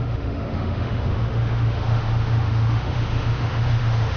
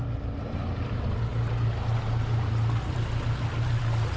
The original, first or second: second